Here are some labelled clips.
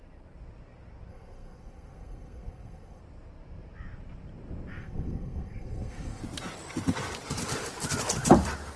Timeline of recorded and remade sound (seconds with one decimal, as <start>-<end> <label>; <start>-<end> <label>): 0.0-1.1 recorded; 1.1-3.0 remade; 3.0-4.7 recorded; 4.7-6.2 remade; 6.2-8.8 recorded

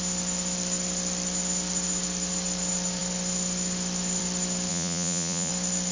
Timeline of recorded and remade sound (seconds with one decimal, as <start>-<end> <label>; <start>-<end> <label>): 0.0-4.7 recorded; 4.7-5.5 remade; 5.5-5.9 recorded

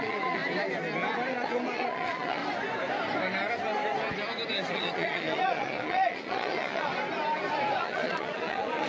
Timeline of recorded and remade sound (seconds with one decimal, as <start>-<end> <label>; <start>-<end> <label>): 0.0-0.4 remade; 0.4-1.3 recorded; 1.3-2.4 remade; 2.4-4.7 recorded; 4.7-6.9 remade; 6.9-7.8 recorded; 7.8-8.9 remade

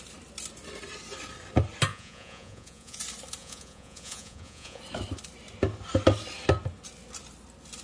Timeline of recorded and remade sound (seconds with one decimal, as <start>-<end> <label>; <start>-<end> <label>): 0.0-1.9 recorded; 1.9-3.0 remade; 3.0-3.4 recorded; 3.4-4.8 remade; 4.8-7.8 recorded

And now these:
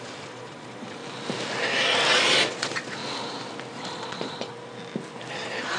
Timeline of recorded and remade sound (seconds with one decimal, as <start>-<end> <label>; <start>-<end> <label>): 0.0-1.0 remade; 1.0-2.5 recorded; 2.5-3.0 remade; 3.0-3.7 recorded; 3.7-4.5 remade; 4.5-5.3 recorded; 5.3-5.8 remade